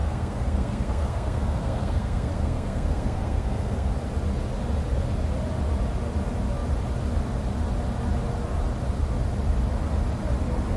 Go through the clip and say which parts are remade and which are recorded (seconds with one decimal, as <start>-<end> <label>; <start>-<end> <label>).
0.0-3.9 remade; 3.9-10.8 recorded